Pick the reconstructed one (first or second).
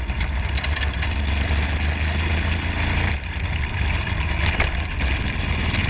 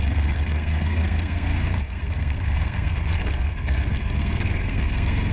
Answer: second